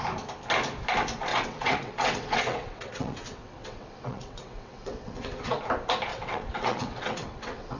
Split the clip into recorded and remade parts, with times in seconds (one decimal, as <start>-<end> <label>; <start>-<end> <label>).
0.0-1.3 recorded; 1.3-5.6 remade; 5.6-6.1 recorded; 6.1-7.8 remade